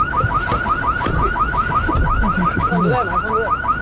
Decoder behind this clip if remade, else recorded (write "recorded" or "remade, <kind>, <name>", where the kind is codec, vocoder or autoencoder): recorded